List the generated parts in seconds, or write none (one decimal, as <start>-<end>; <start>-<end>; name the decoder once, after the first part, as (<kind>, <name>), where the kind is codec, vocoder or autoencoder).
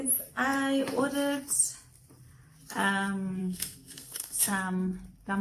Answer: 3.4-4.5 (codec, SNAC)